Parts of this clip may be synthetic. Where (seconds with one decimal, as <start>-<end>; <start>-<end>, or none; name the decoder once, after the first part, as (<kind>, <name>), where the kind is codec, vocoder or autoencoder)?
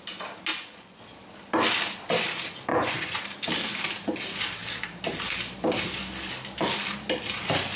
0.5-1.0 (vocoder, Vocos); 2.7-3.2